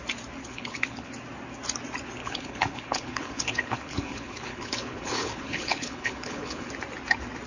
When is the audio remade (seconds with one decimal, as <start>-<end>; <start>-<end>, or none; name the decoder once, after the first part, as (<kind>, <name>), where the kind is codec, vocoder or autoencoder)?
0.4-1.1 (codec, HILCodec); 2.2-6.7